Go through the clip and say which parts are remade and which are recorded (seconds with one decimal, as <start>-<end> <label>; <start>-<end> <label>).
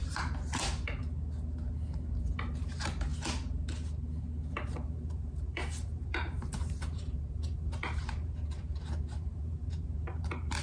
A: 0.0-1.0 remade; 1.0-2.2 recorded; 2.2-3.1 remade; 3.1-4.5 recorded; 4.5-10.6 remade